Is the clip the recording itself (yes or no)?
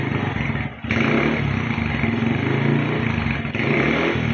yes